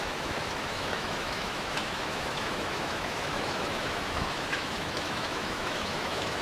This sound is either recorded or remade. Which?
remade